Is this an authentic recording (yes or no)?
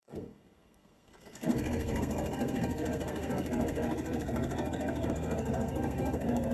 no